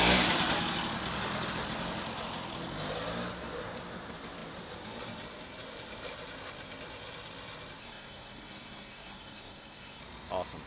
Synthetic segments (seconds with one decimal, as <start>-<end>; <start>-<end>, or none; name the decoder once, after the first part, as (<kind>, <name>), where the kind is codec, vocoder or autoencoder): 7.8-10.0 (codec, SNAC)